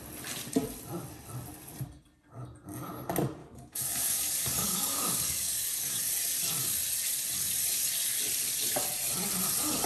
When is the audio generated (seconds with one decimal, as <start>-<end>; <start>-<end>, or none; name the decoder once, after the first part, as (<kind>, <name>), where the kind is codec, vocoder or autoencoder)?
3.4-6.0 (codec, DAC)